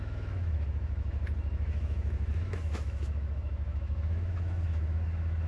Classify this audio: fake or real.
fake